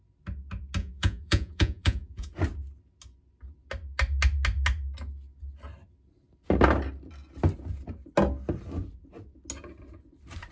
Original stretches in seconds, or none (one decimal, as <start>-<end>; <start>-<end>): 0.0-0.8; 2.3-10.5

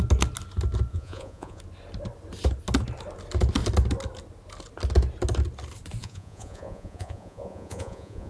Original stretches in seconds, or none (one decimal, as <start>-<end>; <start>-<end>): 0.0-0.9; 1.6-6.0